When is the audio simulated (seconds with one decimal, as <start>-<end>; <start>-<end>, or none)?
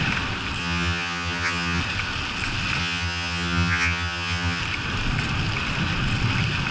0.6-1.8; 2.8-4.6